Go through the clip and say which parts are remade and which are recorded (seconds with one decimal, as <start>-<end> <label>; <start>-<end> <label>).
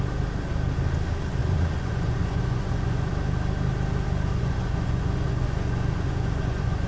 0.0-1.4 recorded; 1.4-3.1 remade; 3.1-4.3 recorded; 4.3-6.9 remade